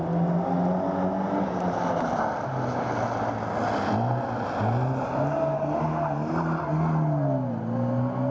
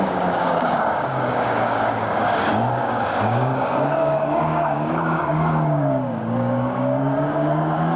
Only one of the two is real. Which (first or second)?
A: first